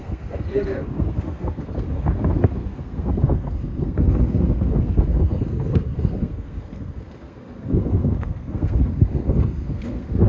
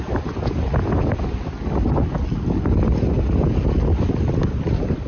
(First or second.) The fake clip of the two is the first